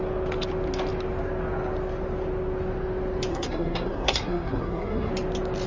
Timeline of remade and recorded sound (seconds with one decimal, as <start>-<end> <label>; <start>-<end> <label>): 0.0-3.3 recorded; 3.3-5.1 remade; 5.1-5.7 recorded